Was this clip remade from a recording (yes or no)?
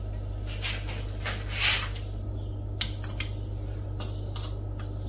no